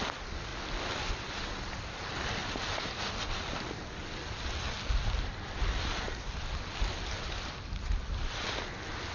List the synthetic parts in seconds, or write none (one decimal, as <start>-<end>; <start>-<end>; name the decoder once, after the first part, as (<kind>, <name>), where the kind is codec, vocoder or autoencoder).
none